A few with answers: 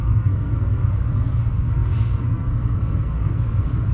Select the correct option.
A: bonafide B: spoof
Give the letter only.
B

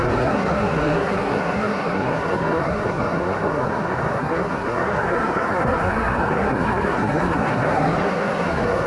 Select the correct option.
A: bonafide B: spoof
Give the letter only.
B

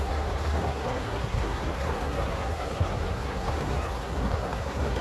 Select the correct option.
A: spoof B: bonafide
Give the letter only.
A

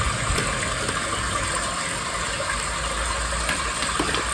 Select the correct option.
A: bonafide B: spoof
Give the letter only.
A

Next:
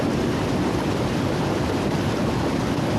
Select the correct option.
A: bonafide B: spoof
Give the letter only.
A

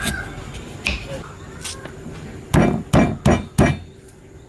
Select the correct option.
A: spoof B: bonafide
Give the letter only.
B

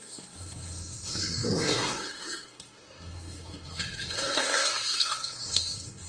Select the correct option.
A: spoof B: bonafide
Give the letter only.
A